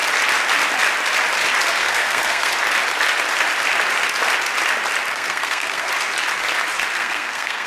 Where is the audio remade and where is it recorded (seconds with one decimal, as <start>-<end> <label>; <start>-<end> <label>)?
0.0-1.8 recorded; 1.8-2.5 remade; 2.5-5.1 recorded; 5.1-5.9 remade; 5.9-6.9 recorded; 6.9-7.7 remade